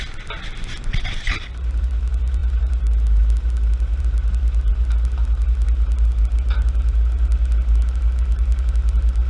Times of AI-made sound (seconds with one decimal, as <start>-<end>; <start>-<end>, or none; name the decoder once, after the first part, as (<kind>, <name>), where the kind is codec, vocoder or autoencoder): none